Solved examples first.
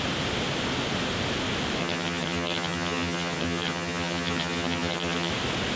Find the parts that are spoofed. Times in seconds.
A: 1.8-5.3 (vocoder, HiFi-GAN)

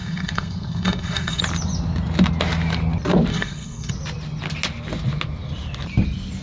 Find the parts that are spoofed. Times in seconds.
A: 0.0-1.4 (codec, SNAC); 3.3-3.9